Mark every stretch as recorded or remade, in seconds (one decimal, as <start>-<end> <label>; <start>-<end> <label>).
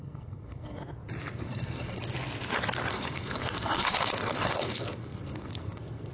0.0-0.8 remade; 0.8-1.3 recorded; 1.3-2.0 remade; 2.0-2.9 recorded; 2.9-6.1 remade